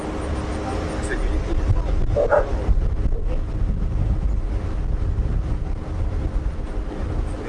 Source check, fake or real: real